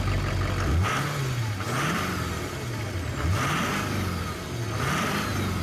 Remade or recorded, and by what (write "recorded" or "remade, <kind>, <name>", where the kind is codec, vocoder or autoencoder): recorded